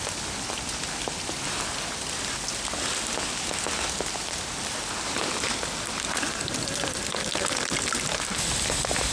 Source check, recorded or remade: recorded